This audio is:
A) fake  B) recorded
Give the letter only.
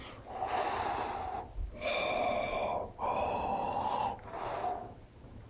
B